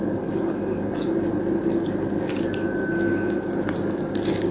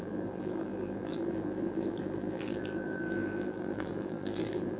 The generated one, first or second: second